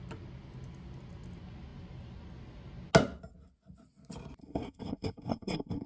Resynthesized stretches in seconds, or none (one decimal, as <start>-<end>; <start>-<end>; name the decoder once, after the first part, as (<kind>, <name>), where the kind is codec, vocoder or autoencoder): 4.4-5.9 (codec, SNAC)